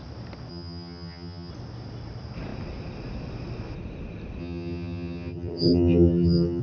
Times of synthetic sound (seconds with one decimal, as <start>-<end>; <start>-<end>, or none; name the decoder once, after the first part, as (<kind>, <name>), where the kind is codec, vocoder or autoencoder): 0.5-1.5 (vocoder, HiFi-GAN); 4.4-6.6